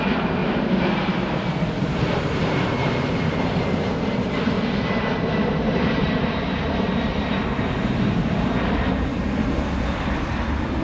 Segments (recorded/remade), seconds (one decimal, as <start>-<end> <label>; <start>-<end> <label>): 0.0-0.4 recorded; 0.4-5.0 remade; 5.0-5.4 recorded; 5.4-6.6 remade; 6.6-10.8 recorded